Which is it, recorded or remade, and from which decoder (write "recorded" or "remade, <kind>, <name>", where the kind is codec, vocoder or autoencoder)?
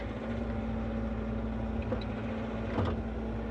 recorded